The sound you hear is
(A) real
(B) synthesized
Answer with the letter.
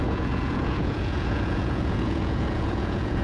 B